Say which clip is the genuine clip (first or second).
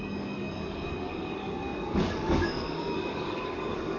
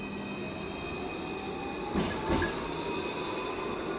second